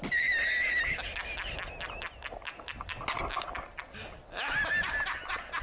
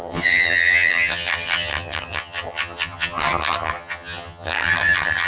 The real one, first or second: first